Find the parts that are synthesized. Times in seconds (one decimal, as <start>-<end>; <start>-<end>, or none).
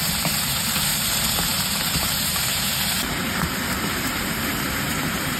0.0-5.4